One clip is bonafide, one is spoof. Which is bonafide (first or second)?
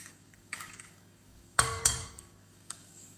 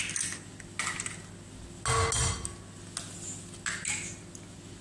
second